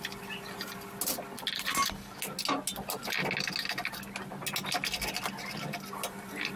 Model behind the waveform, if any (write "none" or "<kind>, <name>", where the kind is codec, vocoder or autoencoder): none